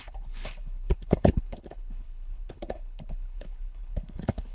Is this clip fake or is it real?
fake